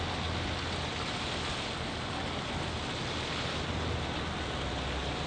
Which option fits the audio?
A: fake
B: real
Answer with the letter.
B